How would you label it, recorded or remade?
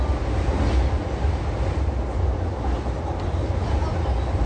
recorded